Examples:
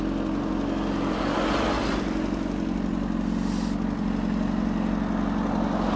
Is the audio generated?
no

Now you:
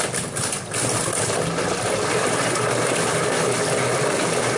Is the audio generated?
no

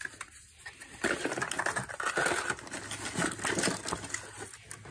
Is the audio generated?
no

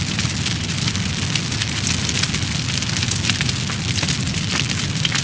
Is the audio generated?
no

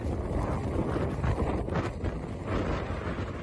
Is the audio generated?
no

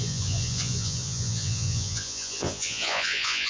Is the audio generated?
yes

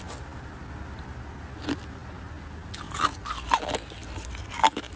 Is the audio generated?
no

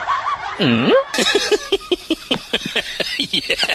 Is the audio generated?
yes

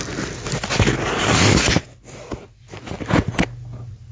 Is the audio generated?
no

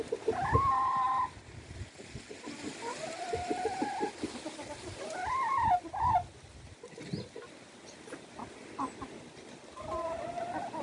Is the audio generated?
no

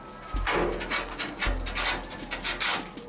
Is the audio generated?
no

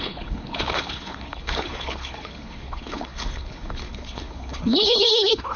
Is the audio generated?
yes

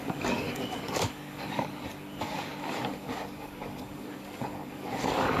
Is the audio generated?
yes